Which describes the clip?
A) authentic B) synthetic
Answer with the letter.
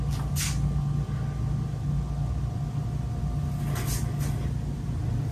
A